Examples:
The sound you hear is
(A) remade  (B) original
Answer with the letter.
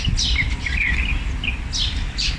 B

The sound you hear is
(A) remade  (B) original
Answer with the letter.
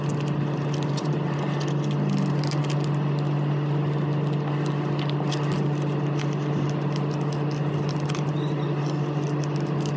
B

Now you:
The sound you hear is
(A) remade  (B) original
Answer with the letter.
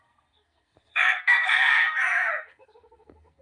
A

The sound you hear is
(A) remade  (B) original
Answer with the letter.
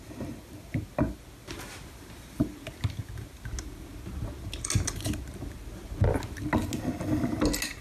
B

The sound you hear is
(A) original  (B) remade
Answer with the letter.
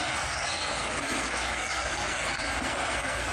B